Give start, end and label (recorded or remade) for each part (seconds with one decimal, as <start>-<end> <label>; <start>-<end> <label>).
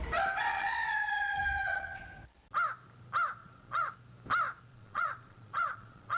0.0-0.5 recorded; 0.5-2.0 remade; 2.0-3.4 recorded; 3.4-3.9 remade; 3.9-4.7 recorded; 4.7-6.2 remade